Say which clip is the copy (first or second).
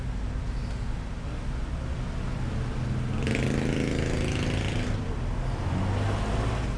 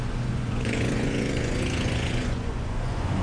second